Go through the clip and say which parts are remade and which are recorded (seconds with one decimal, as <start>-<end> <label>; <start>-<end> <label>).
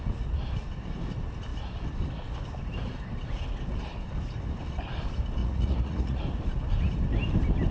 0.0-5.4 recorded; 5.4-6.2 remade; 6.2-7.7 recorded